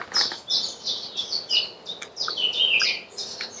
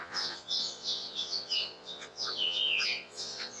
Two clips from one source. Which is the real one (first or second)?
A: first